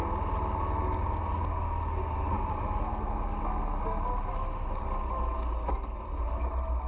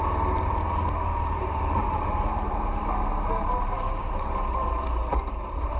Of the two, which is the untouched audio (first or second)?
first